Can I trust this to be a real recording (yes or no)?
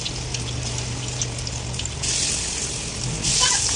yes